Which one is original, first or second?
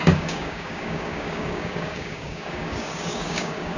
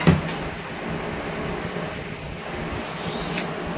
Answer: second